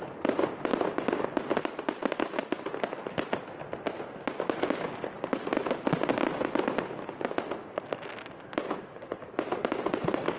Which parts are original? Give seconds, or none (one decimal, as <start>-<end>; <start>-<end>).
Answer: 0.0-10.4